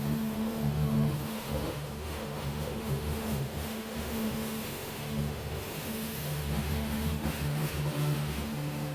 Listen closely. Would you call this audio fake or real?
fake